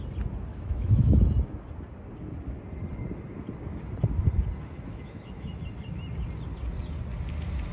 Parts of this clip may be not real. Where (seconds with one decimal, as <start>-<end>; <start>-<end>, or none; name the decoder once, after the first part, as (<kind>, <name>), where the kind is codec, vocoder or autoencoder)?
0.5-1.2 (autoencoder, DAC-VAE); 4.9-5.6